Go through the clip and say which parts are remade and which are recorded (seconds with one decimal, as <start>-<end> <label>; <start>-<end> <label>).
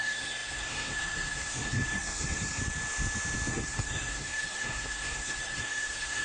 0.0-2.6 remade; 2.6-3.5 recorded; 3.5-6.2 remade